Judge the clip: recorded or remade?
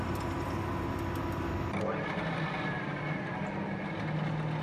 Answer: recorded